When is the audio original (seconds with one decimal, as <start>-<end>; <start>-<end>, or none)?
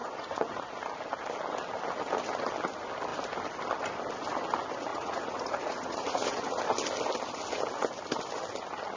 0.7-4.9; 6.6-9.0